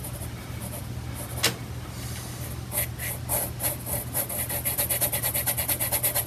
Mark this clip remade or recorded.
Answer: recorded